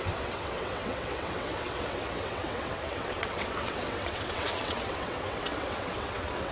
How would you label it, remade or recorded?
remade